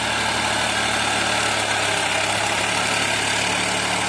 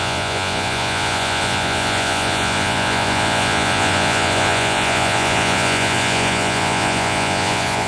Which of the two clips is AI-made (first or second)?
second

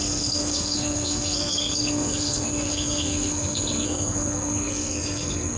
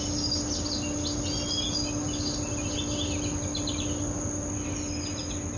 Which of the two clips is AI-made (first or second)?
first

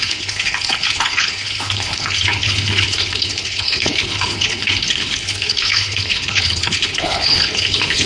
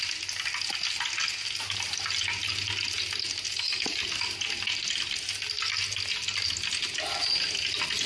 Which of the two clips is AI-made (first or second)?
first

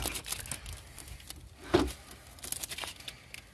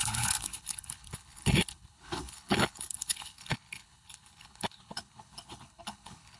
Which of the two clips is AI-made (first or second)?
second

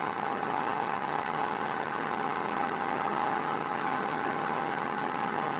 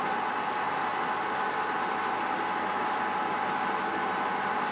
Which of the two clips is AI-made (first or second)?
first